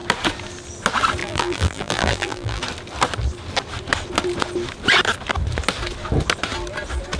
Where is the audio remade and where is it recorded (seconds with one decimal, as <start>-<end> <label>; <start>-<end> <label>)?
0.0-1.2 recorded; 1.2-2.6 remade; 2.6-7.2 recorded

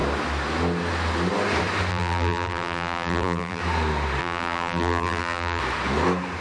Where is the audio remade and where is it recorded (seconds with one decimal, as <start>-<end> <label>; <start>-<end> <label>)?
0.0-1.9 recorded; 1.9-3.6 remade; 3.6-4.2 recorded; 4.2-5.6 remade; 5.6-6.4 recorded